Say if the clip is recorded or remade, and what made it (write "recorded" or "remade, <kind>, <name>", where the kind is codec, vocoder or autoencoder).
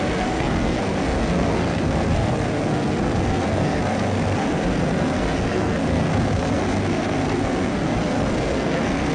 remade, codec, SNAC